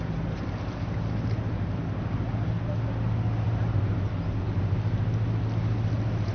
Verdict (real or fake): real